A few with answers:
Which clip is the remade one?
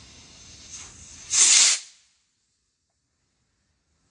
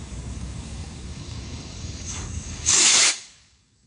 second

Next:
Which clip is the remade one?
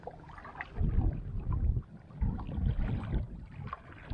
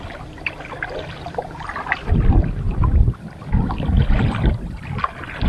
second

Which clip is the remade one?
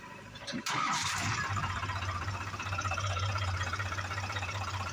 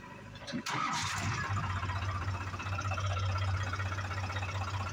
first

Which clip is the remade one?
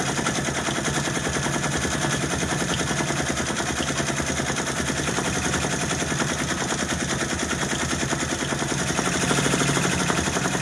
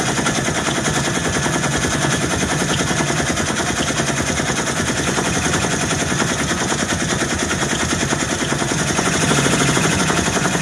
second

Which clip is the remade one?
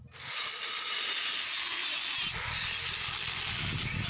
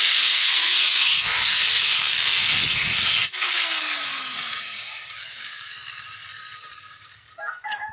second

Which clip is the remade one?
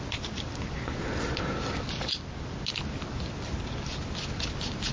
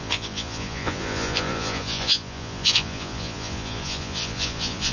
second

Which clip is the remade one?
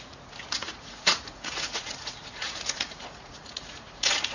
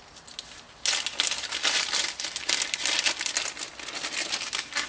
first